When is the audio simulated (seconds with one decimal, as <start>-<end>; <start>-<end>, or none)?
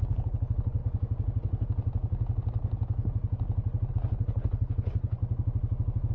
0.0-0.8; 3.9-5.2